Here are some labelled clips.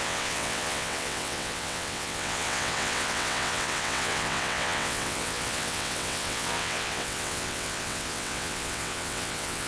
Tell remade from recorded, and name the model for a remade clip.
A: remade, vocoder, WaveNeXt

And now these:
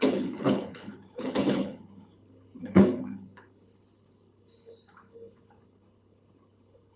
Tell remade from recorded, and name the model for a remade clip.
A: remade, codec, HILCodec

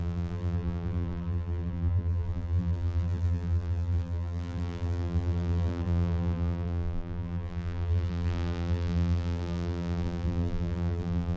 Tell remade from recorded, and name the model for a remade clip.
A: remade, vocoder, BigVGAN v2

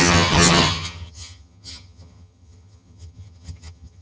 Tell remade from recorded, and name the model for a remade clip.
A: remade, vocoder, HiFi-GAN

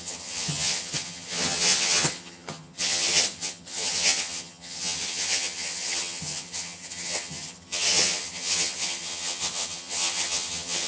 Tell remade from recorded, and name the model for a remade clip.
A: remade, vocoder, HiFi-GAN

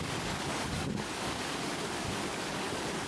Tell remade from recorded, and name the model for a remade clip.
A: remade, codec, DAC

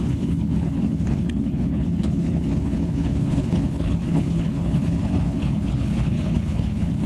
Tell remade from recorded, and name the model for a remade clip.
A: remade, codec, HILCodec